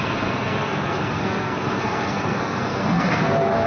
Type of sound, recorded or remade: remade